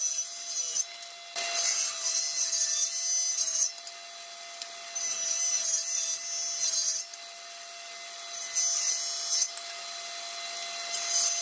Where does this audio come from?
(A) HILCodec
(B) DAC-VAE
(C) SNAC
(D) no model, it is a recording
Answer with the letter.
D